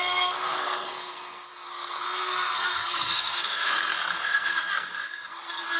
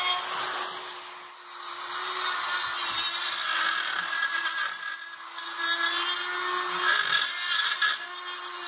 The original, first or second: second